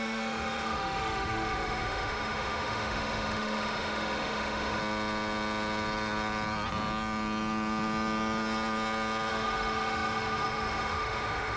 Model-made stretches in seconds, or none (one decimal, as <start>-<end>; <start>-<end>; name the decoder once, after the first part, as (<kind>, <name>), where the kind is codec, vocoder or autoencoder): 0.0-4.8 (autoencoder, DAC-VAE); 9.3-11.6